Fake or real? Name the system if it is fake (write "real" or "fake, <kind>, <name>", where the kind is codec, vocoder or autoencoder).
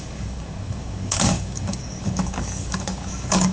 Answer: fake, codec, DAC